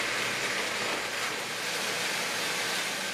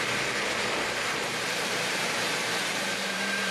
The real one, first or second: first